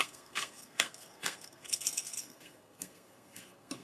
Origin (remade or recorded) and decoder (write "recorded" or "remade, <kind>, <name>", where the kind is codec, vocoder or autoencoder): remade, codec, SNAC